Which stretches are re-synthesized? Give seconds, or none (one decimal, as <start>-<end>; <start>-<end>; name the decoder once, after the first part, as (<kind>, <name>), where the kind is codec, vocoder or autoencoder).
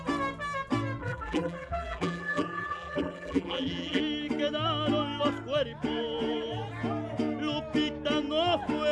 1.0-4.0 (vocoder, BigVGAN v2)